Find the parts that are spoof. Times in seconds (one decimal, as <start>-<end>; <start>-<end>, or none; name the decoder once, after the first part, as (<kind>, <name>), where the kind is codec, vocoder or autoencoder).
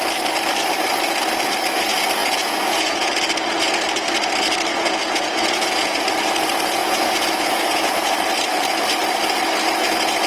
2.2-3.1 (vocoder, Vocos); 4.7-6.0; 6.8-8.1